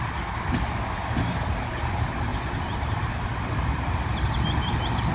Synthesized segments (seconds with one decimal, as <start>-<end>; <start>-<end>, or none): 2.3-3.1

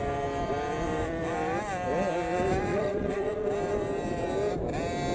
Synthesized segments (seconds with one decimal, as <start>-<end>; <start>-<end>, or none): 2.7-3.5

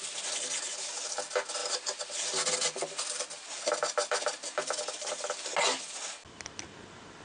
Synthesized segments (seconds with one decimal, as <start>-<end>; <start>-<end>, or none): none

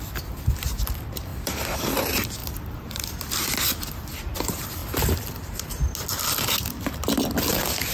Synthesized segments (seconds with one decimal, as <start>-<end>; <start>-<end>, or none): 1.3-2.0; 2.4-3.0

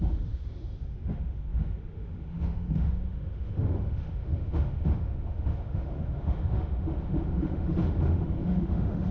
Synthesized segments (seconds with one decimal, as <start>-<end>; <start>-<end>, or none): 0.0-9.1

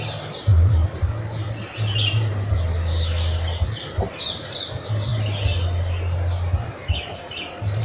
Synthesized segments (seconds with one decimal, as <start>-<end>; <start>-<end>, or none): none

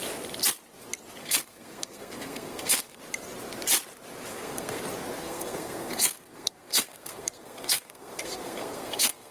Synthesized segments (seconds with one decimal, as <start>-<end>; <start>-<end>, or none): 1.2-3.0; 4.3-4.8; 5.2-9.3

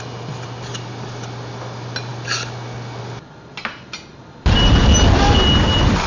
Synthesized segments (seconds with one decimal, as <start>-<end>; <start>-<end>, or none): none